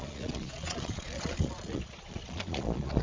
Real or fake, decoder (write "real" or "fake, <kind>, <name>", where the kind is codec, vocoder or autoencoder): fake, vocoder, Vocos